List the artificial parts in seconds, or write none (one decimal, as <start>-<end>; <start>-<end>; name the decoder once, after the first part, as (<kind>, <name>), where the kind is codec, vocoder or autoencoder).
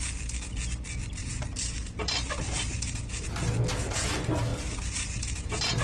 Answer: 1.2-3.5 (vocoder, BigVGAN v2); 4.5-5.8